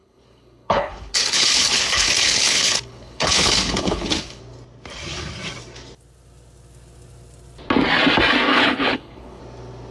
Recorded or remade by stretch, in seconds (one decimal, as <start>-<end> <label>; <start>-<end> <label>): 0.0-4.4 remade; 4.4-8.5 recorded; 8.5-9.4 remade; 9.4-9.9 recorded